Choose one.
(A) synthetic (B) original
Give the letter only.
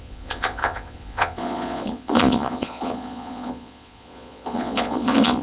A